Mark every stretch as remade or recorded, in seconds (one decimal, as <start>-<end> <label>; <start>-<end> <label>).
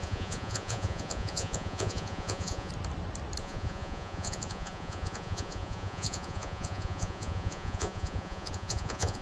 0.0-2.7 remade; 2.7-3.4 recorded; 3.4-9.2 remade